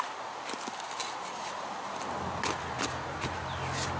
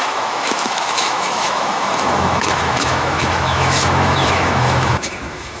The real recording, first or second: first